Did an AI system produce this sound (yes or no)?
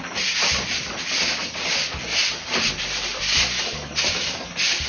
yes